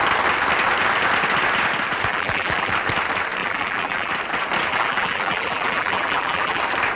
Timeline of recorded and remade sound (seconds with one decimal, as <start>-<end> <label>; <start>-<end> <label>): 0.0-2.1 recorded; 2.1-2.7 remade; 2.7-3.4 recorded; 3.4-4.1 remade; 4.1-4.7 recorded; 4.7-6.6 remade; 6.6-7.0 recorded